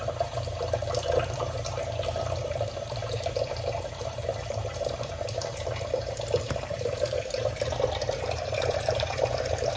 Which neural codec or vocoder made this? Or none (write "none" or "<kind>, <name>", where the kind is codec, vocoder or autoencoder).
vocoder, BigVGAN v2